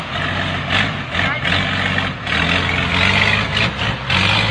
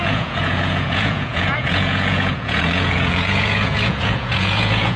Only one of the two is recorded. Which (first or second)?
first